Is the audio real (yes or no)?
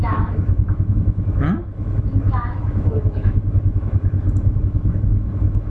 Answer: no